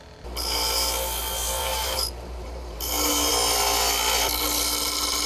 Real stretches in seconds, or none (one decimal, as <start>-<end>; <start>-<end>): 0.0-1.6; 3.3-5.3